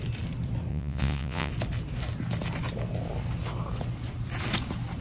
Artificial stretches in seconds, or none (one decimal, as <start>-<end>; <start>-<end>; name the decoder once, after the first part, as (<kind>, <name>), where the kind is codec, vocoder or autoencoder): 0.7-1.5 (vocoder, Vocos)